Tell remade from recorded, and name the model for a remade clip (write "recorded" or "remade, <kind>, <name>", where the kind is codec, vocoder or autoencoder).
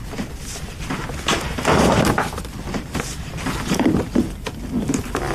recorded